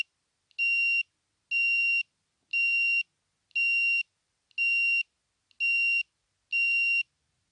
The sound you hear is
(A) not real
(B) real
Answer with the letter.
B